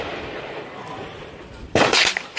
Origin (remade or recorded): remade